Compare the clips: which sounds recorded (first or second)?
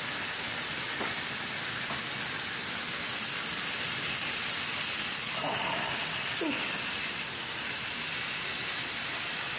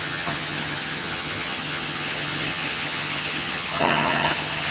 first